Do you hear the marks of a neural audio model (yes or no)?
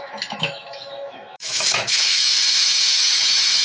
yes